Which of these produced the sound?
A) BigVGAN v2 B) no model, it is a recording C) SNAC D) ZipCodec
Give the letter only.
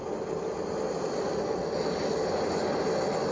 B